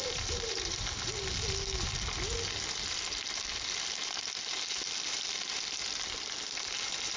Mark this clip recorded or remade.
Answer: recorded